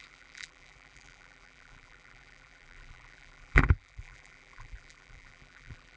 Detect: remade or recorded remade